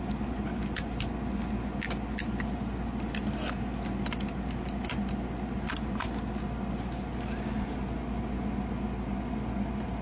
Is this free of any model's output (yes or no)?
yes